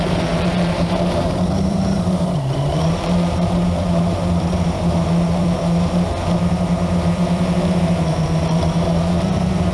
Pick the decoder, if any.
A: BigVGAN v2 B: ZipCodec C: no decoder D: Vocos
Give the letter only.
A